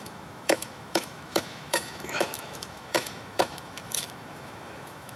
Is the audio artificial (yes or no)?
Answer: yes